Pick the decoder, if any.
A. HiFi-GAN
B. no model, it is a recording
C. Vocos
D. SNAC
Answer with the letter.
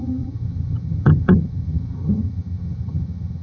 A